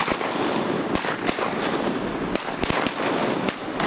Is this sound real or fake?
real